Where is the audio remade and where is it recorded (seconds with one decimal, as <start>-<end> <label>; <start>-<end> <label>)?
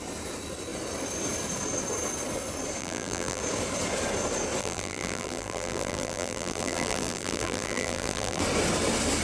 0.0-2.8 recorded; 2.8-3.4 remade; 3.4-4.6 recorded; 4.6-8.4 remade; 8.4-9.2 recorded